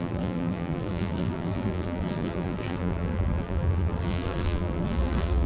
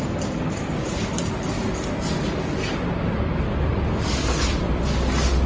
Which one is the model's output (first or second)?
first